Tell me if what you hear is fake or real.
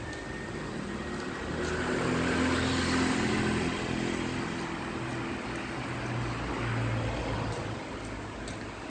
real